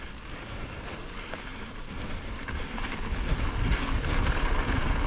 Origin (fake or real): real